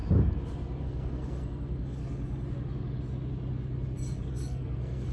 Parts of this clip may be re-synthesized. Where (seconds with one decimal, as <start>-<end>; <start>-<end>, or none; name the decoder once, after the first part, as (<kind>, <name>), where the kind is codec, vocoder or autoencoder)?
0.8-2.0 (codec, SNAC); 4.3-5.1